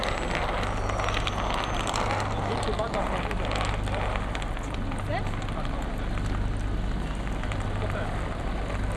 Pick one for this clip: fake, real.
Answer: real